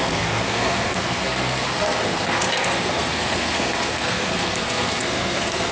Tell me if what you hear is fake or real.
fake